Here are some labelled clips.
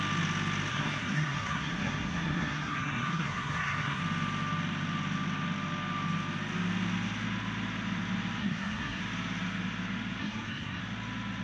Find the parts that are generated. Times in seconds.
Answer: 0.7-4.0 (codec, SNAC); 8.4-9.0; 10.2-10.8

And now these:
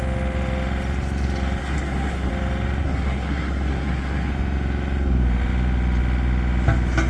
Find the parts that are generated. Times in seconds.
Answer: 1.6-2.3 (codec, SNAC); 2.8-4.3

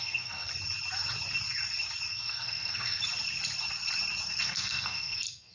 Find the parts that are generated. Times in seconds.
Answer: 0.0-0.5 (codec, SNAC); 2.1-3.0; 4.4-5.5

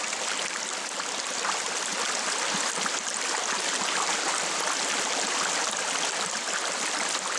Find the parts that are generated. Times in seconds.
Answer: none

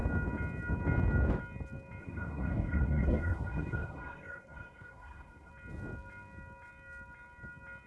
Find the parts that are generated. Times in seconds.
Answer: 2.0-5.5 (codec, SNAC)